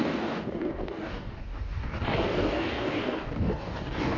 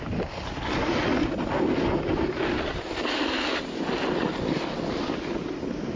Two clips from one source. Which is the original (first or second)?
second